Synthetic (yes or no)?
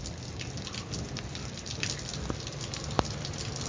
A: no